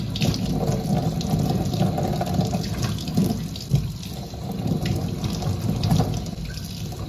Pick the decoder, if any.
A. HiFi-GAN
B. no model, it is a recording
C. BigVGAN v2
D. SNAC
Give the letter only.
B